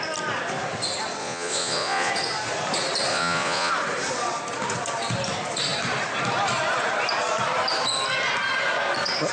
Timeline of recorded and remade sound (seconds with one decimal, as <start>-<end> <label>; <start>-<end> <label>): 0.0-1.2 recorded; 1.2-2.1 remade; 2.1-3.1 recorded; 3.1-3.7 remade; 3.7-9.3 recorded